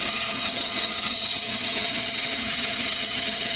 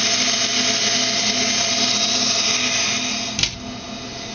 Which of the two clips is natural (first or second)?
second